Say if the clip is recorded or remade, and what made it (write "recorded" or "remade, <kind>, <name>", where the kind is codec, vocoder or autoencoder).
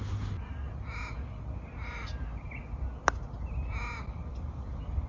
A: recorded